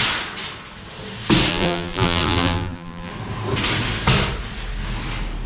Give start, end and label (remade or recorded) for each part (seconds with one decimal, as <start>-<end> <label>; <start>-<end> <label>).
0.0-1.5 recorded; 1.5-3.1 remade; 3.1-5.5 recorded